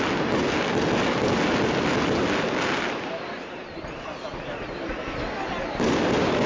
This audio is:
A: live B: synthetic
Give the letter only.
A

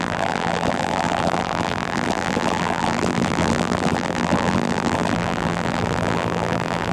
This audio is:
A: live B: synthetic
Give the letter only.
B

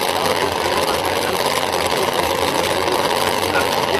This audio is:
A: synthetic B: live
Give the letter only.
A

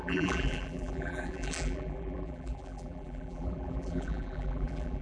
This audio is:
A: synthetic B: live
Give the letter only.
A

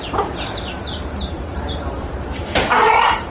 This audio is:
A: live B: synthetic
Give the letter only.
B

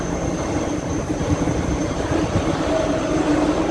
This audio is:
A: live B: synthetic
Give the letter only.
B